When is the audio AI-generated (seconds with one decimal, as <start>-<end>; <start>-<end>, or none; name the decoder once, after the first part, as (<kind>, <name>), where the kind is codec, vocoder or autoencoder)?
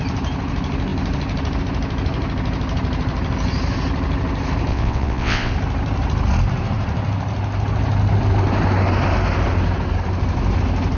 4.7-5.5 (vocoder, WaveNeXt)